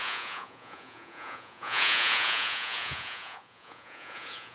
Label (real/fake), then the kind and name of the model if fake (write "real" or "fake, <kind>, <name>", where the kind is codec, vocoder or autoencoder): fake, vocoder, Vocos